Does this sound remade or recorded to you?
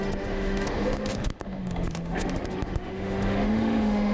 remade